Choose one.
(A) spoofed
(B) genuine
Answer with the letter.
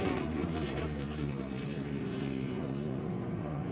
A